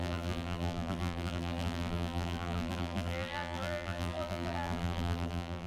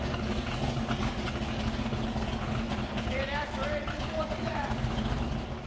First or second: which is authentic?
second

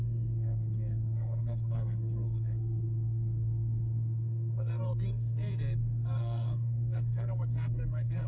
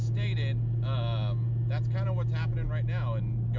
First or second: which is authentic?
second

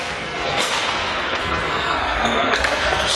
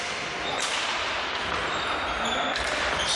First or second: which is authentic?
second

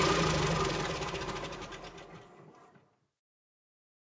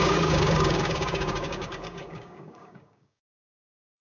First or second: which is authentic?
first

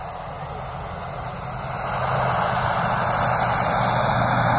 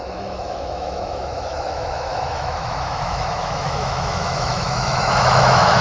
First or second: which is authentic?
first